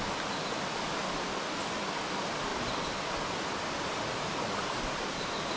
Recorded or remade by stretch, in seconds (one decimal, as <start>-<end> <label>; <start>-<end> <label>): 0.0-5.6 recorded